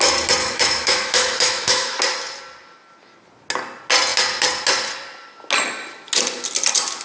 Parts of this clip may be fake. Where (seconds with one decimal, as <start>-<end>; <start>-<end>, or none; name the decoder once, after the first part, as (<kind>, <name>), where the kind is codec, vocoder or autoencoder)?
0.4-2.0 (autoencoder, DAC-VAE)